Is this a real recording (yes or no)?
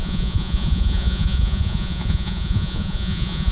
no